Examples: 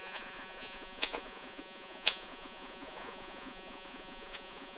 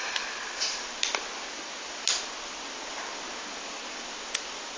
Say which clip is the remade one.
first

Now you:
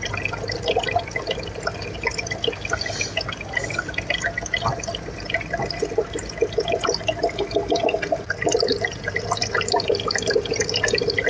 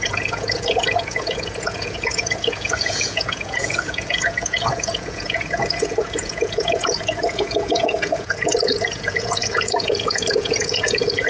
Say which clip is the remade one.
second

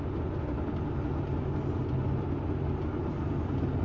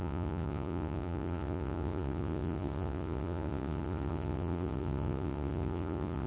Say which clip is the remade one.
second